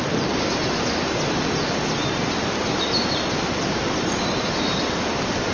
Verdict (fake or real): real